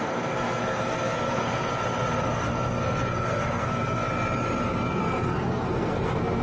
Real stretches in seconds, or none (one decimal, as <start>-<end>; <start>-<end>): 1.7-2.2; 4.0-5.0